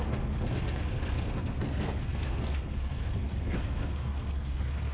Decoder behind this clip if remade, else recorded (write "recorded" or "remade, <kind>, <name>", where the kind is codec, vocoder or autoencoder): remade, codec, SNAC